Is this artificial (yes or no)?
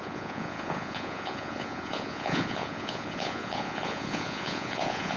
yes